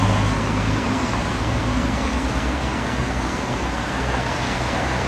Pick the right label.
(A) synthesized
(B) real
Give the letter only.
A